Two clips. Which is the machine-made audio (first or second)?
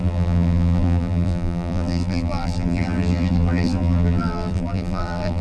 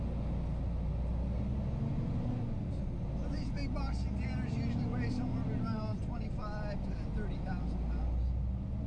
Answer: first